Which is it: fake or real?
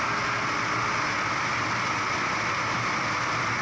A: real